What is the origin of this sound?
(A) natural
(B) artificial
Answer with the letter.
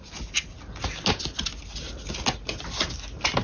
A